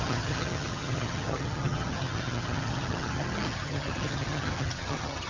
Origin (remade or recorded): remade